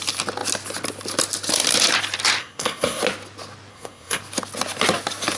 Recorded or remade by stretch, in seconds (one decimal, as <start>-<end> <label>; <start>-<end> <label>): 0.0-2.4 recorded; 2.4-3.0 remade; 3.0-3.7 recorded; 3.7-4.2 remade; 4.2-5.4 recorded